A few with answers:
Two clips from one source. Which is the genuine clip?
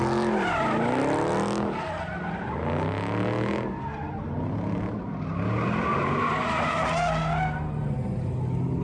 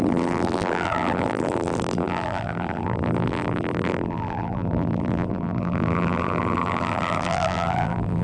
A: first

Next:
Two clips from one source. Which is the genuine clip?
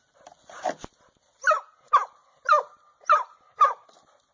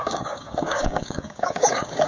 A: first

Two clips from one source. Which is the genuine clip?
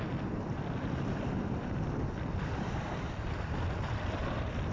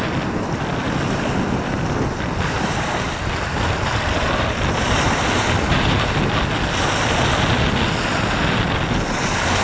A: second